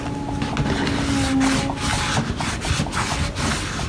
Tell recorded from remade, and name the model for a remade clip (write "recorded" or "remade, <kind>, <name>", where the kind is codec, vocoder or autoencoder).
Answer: recorded